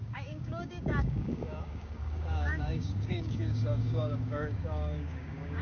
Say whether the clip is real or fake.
fake